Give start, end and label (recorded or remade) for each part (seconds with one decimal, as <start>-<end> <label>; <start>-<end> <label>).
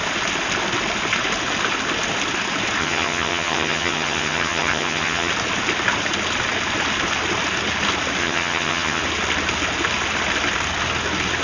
0.0-2.8 recorded; 2.8-5.3 remade; 5.3-8.2 recorded; 8.2-9.0 remade; 9.0-11.4 recorded